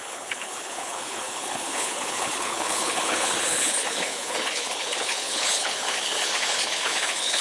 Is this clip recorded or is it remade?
remade